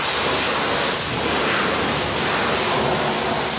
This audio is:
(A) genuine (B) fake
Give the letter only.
A